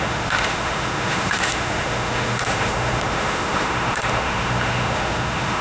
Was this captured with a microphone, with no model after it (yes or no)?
no